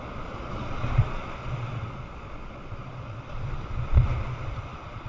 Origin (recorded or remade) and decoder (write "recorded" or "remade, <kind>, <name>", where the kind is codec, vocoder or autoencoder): remade, vocoder, Vocos